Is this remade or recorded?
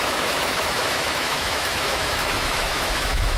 remade